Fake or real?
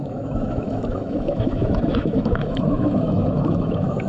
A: fake